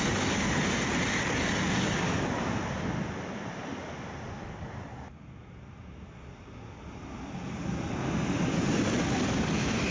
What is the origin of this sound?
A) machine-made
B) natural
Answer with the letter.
B